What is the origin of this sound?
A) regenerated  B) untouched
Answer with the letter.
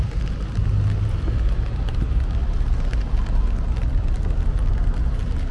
B